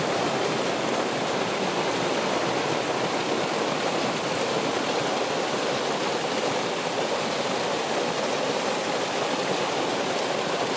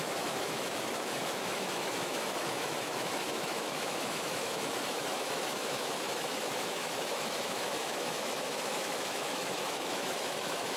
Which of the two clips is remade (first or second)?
second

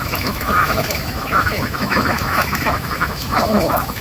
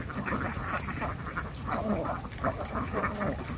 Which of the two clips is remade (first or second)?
first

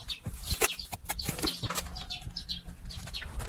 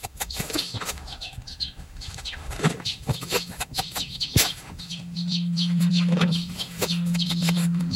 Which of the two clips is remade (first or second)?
second